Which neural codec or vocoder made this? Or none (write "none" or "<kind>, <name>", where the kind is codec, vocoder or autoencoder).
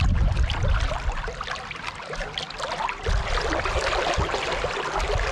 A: none